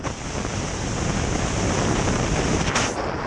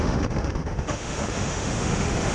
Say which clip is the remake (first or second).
second